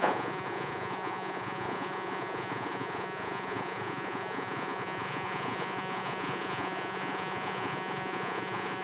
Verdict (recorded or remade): remade